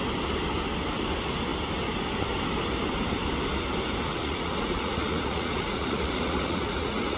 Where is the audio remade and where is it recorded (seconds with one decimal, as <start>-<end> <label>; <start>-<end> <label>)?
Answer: 0.0-4.1 recorded; 4.1-7.2 remade